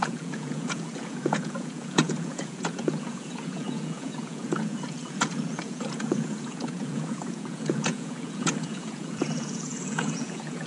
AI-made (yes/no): yes